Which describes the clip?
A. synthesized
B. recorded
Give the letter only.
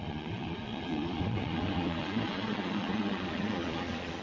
A